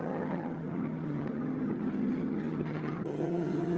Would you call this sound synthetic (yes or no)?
yes